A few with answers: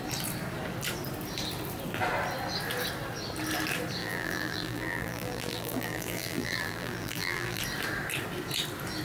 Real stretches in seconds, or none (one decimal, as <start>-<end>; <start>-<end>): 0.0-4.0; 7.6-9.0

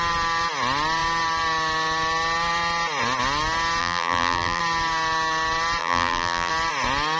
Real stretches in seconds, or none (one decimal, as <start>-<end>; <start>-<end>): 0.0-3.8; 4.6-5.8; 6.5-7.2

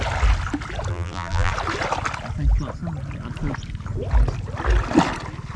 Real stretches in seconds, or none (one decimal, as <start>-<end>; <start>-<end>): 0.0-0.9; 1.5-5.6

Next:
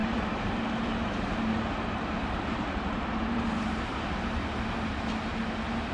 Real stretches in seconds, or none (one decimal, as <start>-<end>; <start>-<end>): none

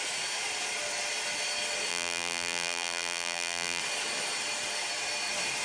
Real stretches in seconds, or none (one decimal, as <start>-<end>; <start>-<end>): 0.0-1.9; 3.8-5.6

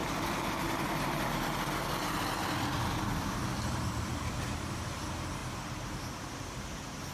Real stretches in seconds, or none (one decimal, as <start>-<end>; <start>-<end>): 4.3-7.1

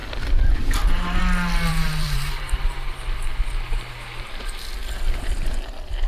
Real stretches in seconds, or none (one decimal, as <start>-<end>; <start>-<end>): 0.0-1.7; 4.3-6.1

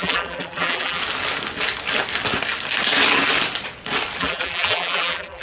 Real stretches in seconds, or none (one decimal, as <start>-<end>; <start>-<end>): 1.0-4.2